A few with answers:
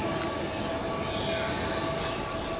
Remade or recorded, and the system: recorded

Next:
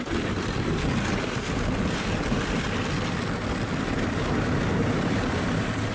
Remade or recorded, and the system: recorded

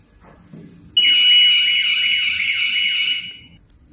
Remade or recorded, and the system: recorded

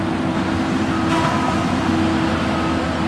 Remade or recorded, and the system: recorded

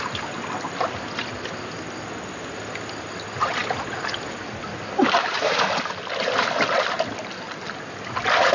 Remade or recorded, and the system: recorded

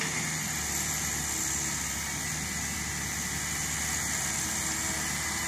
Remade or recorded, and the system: recorded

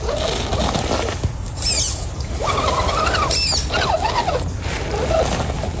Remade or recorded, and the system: recorded